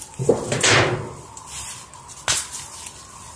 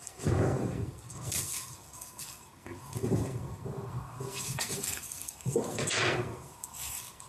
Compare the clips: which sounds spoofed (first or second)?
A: second